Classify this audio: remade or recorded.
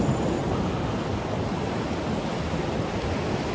recorded